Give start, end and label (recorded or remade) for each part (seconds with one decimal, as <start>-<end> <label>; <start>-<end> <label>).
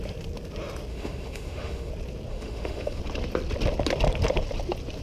0.0-0.9 recorded; 0.9-1.9 remade; 1.9-2.3 recorded; 2.3-3.0 remade; 3.0-5.0 recorded